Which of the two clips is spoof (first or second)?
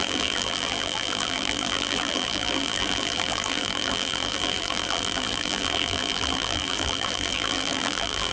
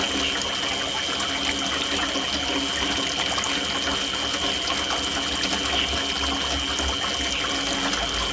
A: first